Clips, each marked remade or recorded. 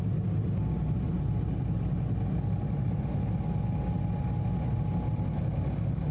recorded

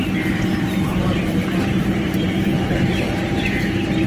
remade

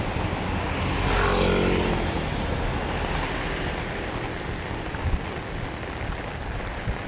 recorded